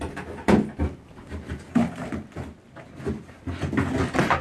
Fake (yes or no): no